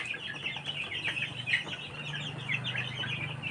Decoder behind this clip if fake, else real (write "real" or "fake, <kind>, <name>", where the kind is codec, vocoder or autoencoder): real